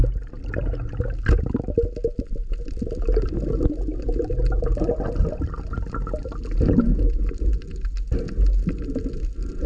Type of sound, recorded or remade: recorded